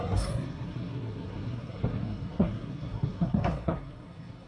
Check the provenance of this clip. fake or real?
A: fake